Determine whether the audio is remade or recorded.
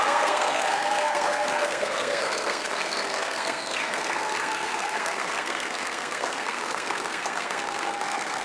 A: remade